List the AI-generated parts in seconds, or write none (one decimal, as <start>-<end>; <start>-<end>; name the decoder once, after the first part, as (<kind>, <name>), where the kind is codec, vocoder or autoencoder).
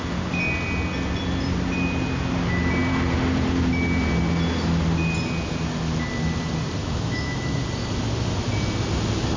6.8-7.6 (autoencoder, DAC-VAE)